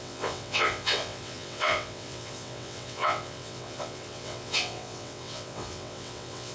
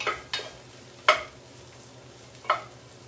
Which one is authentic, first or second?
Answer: second